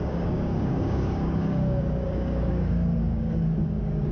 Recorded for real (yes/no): no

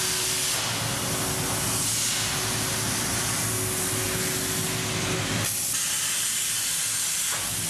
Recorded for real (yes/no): yes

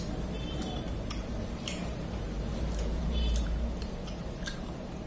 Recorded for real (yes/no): no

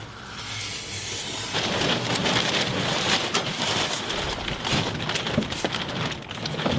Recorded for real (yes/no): no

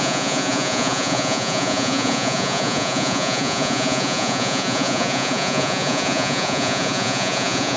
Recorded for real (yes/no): no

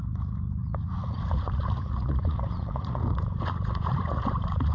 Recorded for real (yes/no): no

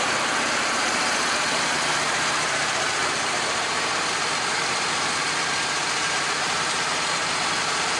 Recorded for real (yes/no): no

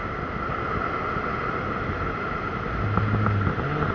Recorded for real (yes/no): yes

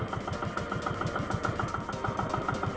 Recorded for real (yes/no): yes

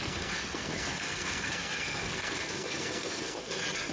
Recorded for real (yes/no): no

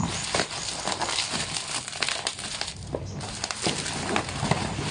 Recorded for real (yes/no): yes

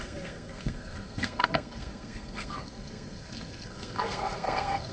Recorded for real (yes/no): no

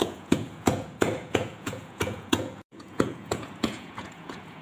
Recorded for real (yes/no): no